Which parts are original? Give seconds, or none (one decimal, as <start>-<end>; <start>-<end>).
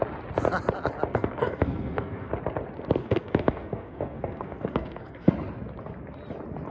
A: 0.0-1.1; 2.3-3.0; 5.3-6.7